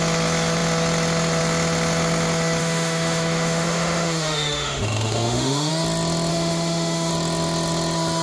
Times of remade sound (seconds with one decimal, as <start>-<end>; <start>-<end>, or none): 2.6-5.7; 6.3-7.1